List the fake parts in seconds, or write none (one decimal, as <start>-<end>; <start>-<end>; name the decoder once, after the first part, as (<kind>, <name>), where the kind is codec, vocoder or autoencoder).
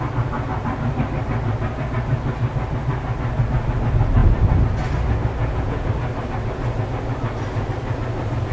5.4-5.9 (vocoder, Vocos)